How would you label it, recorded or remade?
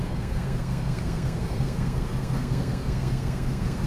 remade